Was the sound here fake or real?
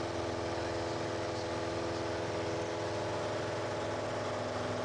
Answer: real